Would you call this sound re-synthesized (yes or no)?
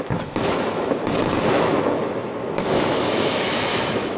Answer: yes